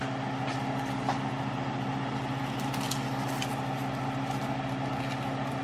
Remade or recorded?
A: recorded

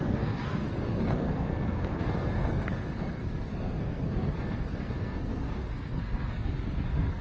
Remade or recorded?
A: remade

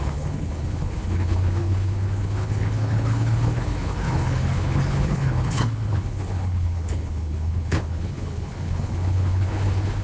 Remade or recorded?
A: remade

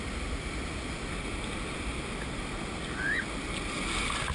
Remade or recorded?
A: recorded